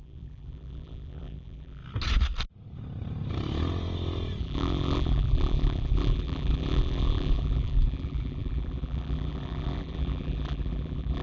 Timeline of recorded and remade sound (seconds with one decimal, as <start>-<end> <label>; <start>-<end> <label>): 0.0-1.8 remade; 1.8-4.4 recorded; 4.4-11.2 remade